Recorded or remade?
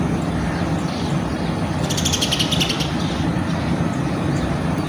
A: recorded